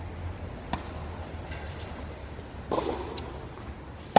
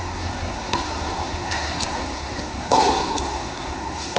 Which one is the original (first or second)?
first